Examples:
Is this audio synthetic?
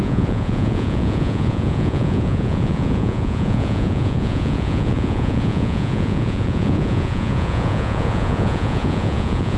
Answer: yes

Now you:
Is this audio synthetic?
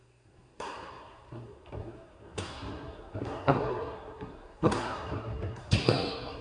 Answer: yes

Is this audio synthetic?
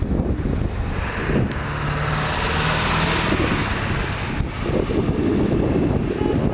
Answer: no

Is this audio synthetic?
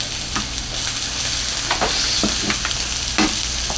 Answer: no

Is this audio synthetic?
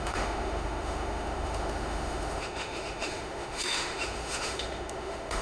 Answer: yes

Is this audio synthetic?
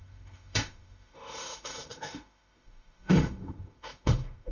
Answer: yes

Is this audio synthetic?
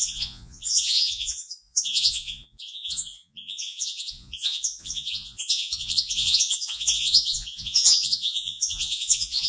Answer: yes